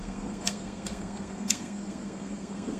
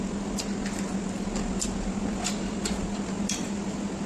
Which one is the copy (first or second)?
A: first